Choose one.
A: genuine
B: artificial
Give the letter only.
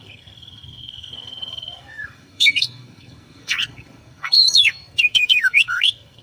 B